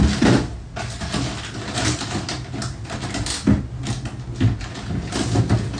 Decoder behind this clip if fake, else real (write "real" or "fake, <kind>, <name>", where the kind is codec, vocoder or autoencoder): real